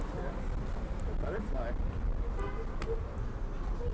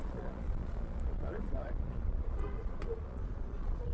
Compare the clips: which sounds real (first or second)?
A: first